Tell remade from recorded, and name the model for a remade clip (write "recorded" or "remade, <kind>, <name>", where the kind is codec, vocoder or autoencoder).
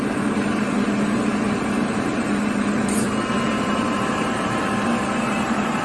remade, vocoder, BigVGAN v2